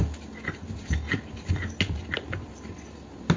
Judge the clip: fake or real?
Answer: real